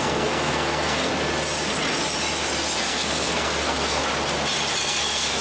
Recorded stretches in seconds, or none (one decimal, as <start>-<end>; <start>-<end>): 1.1-2.8; 4.0-4.8